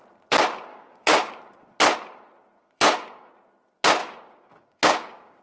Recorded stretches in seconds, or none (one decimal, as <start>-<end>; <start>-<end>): 0.0-0.7; 1.4-2.6; 3.3-4.0